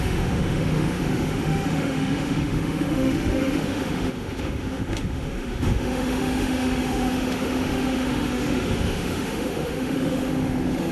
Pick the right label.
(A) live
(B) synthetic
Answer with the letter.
B